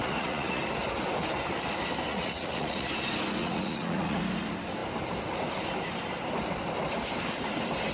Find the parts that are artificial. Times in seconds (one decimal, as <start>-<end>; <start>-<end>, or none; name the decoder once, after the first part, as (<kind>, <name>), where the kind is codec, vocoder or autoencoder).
0.0-0.6 (vocoder, Vocos); 2.1-2.9; 3.4-4.2